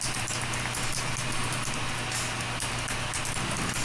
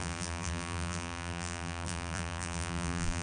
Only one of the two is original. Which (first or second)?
first